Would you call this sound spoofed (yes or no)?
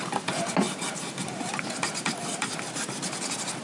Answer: no